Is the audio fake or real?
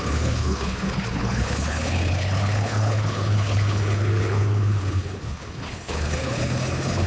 fake